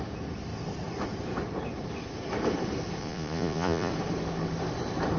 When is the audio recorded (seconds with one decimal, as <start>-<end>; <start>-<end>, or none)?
0.0-3.0; 3.9-5.2